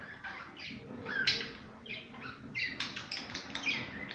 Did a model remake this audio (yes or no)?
no